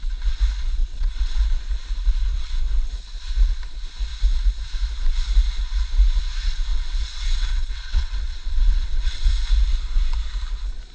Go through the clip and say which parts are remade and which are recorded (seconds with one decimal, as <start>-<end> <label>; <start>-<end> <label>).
0.0-0.8 recorded; 0.8-1.4 remade; 1.4-2.3 recorded; 2.3-2.9 remade; 2.9-6.7 recorded; 6.7-9.3 remade; 9.3-10.9 recorded